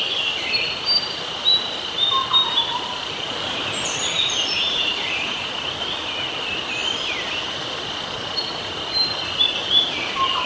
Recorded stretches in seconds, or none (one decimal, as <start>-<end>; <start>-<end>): 0.0-2.7; 5.5-10.5